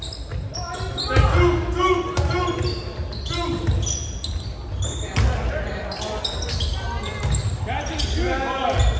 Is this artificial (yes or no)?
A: no